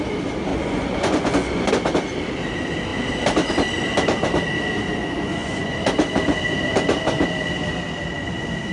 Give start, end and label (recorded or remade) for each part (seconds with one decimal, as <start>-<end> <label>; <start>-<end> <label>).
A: 0.0-0.5 recorded; 0.5-1.7 remade; 1.7-5.0 recorded; 5.0-5.7 remade; 5.7-8.7 recorded